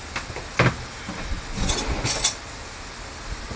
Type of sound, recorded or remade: recorded